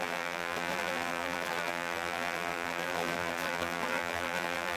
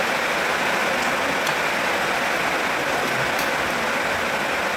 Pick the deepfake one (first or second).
first